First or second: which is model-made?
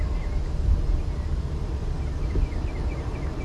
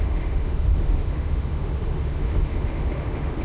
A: second